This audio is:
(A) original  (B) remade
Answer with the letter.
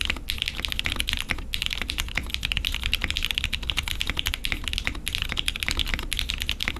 A